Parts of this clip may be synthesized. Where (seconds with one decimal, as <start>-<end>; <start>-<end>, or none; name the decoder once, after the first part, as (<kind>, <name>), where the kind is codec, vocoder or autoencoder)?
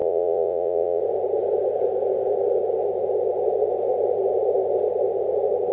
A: 0.0-1.0 (vocoder, Vocos)